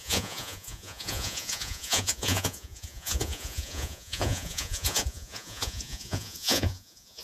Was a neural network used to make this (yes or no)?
yes